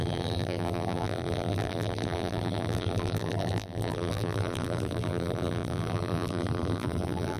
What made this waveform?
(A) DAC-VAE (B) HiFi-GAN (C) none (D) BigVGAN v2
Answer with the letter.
D